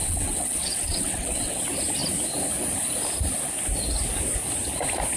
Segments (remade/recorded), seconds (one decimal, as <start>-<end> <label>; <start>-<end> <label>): 0.0-1.6 remade; 1.6-5.2 recorded